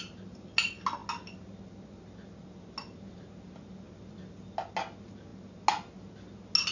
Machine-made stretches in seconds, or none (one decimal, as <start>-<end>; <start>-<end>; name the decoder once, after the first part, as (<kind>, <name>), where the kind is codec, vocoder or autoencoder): none